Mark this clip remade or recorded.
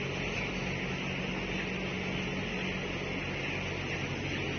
recorded